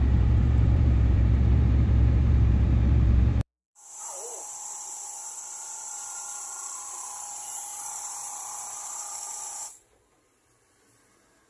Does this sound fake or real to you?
fake